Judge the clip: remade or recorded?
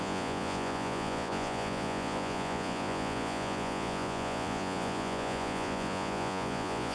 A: remade